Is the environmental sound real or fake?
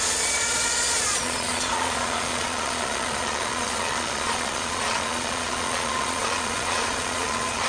fake